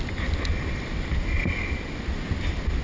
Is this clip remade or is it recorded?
recorded